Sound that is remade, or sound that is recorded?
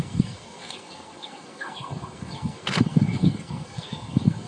remade